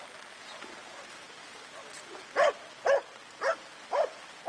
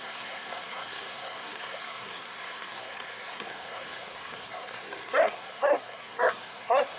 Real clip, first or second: first